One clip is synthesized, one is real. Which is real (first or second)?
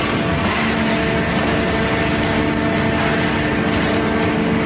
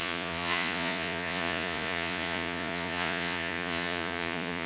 first